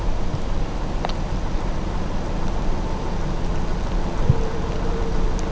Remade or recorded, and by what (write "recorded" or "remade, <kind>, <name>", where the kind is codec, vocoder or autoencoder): recorded